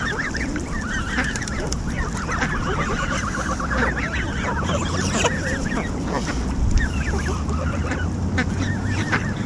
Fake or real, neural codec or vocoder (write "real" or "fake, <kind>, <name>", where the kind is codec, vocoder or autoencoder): fake, vocoder, BigVGAN v2